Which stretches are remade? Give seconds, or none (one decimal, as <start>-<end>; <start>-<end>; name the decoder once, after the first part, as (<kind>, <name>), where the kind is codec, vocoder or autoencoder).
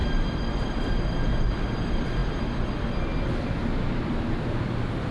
none